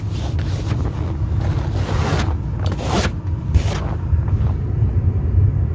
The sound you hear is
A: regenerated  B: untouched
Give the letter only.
B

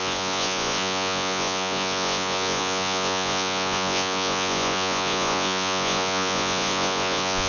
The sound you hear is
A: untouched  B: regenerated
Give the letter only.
B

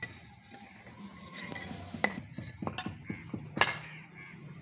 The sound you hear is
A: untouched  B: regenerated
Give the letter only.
A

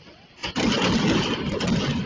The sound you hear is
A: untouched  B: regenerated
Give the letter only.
A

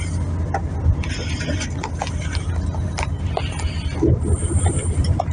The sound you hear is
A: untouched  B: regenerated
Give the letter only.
A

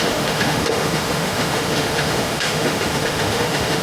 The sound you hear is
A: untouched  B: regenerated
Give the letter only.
B